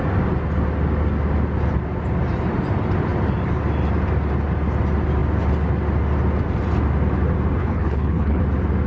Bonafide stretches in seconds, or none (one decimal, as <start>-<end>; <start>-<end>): 0.0-7.6; 8.4-8.9